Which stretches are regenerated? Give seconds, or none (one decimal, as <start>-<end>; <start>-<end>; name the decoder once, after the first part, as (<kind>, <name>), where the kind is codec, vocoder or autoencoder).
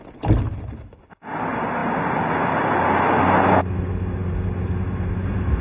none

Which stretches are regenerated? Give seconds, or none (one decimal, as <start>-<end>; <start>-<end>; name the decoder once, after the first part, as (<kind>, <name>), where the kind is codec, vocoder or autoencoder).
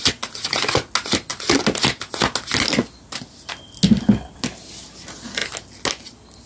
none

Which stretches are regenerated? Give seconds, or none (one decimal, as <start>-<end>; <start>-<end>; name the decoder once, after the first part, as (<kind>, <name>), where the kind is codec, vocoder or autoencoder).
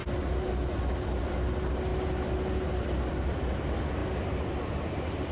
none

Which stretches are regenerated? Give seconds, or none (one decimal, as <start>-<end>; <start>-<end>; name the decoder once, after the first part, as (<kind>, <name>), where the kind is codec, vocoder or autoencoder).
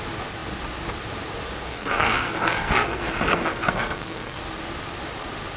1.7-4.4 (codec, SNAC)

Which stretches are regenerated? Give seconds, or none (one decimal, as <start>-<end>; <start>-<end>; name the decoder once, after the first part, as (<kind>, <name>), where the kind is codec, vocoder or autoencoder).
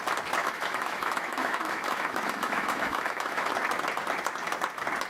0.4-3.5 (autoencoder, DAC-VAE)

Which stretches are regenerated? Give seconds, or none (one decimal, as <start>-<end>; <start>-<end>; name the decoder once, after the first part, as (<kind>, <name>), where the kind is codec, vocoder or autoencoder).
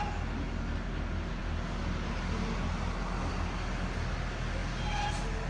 none